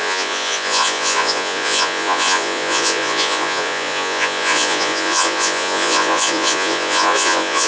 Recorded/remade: remade